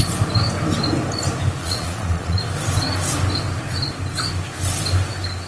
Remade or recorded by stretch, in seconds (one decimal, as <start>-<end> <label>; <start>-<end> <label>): 0.0-1.6 recorded; 1.6-2.4 remade; 2.4-5.5 recorded